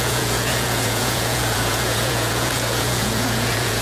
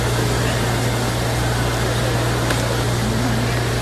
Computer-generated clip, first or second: first